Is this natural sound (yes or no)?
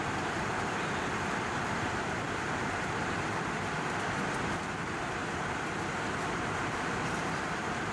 no